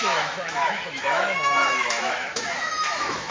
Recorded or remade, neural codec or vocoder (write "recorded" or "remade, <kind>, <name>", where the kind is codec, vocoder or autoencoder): remade, autoencoder, DAC-VAE